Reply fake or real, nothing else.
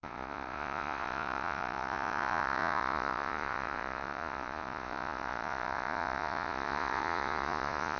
fake